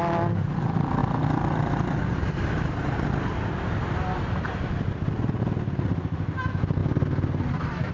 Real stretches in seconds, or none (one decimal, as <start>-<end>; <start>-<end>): 0.0-7.9